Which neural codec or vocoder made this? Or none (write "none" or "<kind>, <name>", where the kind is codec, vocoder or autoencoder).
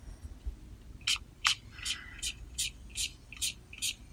none